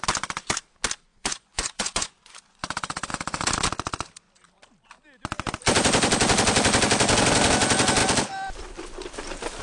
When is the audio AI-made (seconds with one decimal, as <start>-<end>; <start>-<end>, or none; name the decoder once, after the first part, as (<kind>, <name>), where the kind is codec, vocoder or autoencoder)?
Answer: 1.1-3.1 (vocoder, Vocos)